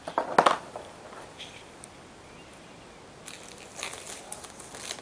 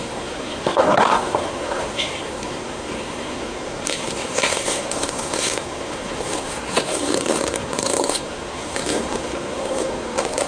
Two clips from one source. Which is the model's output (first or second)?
second